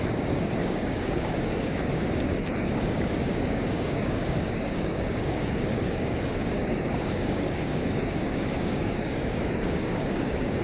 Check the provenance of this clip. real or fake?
fake